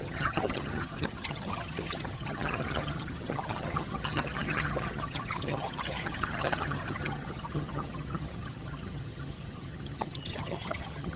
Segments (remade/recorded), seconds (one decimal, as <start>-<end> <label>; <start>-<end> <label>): 0.0-11.2 remade